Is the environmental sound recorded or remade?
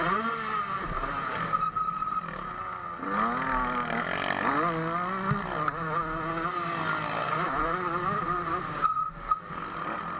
recorded